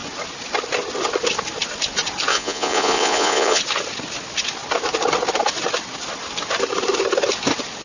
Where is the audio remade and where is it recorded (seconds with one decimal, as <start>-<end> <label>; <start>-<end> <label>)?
0.0-2.3 recorded; 2.3-3.6 remade; 3.6-7.8 recorded